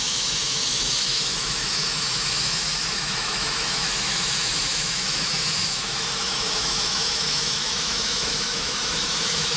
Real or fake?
fake